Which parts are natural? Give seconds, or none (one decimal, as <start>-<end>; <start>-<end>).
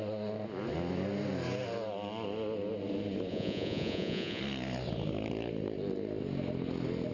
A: 0.0-3.3; 4.4-7.1